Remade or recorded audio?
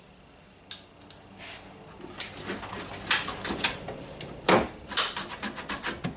recorded